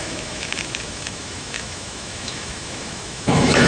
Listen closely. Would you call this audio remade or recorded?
remade